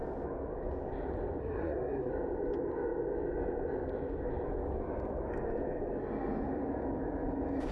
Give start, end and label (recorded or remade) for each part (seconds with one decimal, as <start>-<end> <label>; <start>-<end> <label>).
0.0-1.4 recorded; 1.4-2.1 remade; 2.1-7.7 recorded